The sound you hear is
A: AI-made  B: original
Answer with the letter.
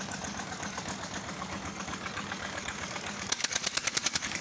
A